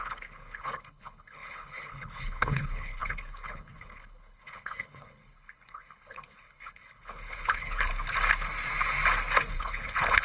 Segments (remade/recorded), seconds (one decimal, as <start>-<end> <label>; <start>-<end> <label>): 0.0-7.9 remade; 7.9-9.5 recorded; 9.5-10.2 remade